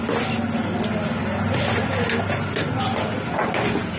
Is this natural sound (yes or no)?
yes